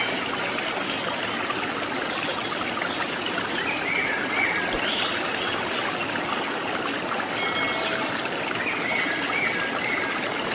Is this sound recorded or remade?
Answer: recorded